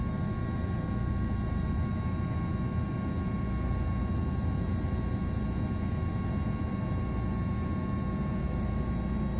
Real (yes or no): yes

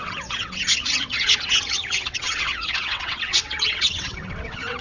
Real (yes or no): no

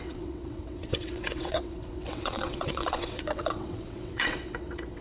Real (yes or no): no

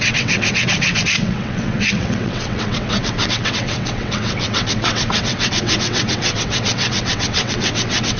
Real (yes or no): no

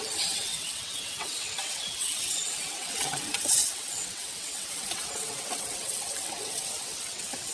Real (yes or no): no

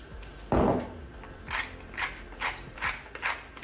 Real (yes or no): yes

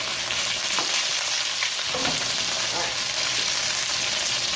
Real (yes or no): yes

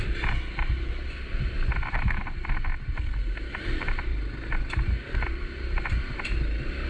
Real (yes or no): yes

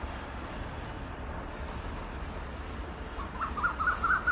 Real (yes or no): yes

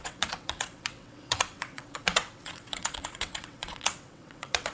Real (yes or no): no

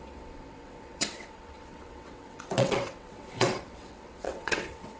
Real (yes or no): no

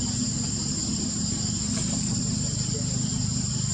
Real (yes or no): yes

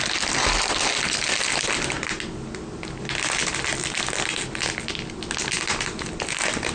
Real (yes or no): yes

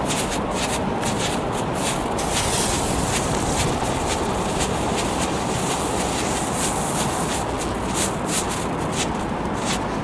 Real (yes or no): yes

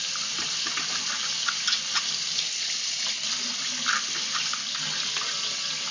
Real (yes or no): yes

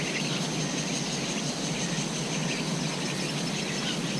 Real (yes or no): yes